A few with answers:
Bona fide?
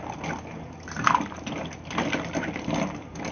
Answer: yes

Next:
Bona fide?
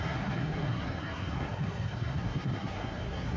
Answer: no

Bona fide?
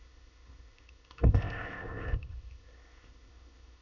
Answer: no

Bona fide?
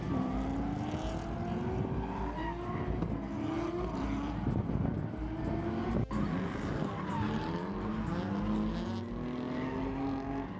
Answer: yes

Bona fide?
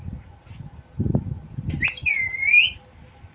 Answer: yes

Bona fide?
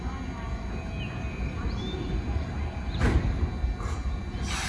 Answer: yes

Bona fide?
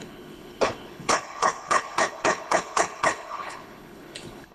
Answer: no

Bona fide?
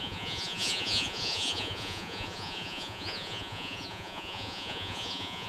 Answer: no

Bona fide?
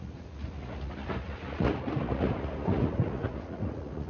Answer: no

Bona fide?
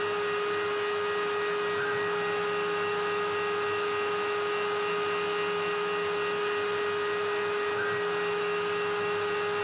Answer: yes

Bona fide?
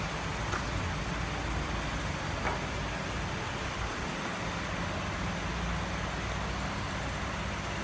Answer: yes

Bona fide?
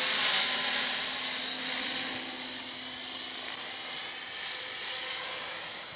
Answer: yes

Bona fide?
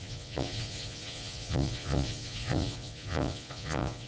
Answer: no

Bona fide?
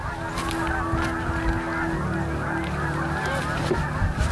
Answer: yes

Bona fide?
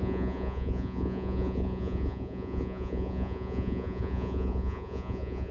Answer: no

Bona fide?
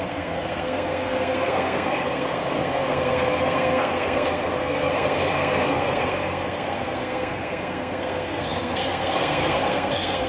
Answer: no